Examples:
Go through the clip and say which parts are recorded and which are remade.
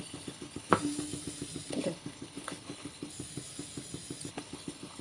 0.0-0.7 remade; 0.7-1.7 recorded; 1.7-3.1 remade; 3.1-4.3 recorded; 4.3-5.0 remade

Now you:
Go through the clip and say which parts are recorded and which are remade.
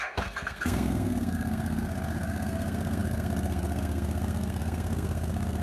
0.0-5.6 remade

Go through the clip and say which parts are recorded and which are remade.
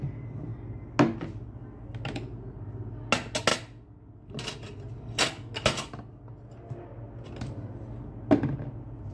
0.0-9.1 recorded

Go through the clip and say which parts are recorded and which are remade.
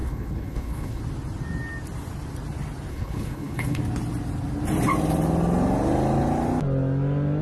0.0-1.0 remade; 1.0-2.9 recorded; 2.9-3.8 remade; 3.8-7.4 recorded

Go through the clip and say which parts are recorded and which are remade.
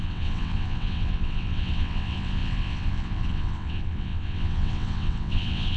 0.0-5.8 remade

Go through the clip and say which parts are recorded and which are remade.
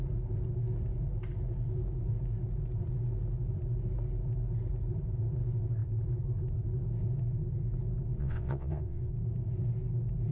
0.0-8.2 recorded; 8.2-9.1 remade; 9.1-10.3 recorded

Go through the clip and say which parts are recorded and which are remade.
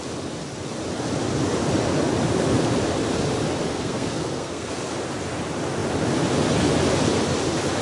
0.0-3.7 recorded; 3.7-4.7 remade; 4.7-7.8 recorded